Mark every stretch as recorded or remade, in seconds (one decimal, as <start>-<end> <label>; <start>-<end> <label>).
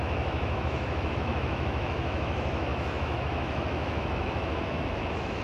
0.0-5.4 remade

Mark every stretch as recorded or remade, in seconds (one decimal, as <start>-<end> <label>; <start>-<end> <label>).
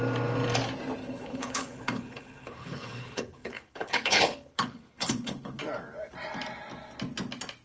0.0-1.0 recorded; 1.0-5.6 remade; 5.6-7.6 recorded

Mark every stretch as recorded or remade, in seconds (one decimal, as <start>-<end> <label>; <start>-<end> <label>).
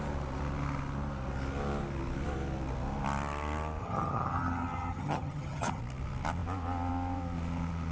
0.0-3.8 recorded; 3.8-5.8 remade; 5.8-7.9 recorded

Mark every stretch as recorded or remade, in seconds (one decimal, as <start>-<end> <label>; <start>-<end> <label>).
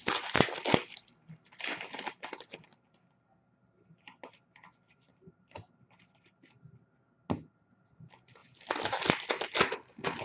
0.0-10.2 recorded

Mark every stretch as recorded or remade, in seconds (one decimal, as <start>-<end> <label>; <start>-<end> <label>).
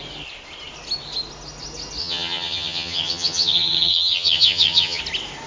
0.0-2.0 recorded; 2.0-5.0 remade; 5.0-5.5 recorded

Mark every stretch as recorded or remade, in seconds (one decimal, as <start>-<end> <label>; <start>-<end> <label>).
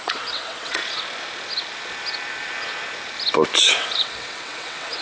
0.0-0.8 remade; 0.8-3.8 recorded; 3.8-5.0 remade